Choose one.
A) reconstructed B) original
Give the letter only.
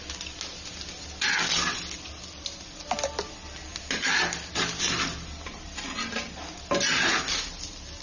B